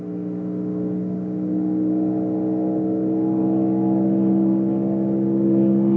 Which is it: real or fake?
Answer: real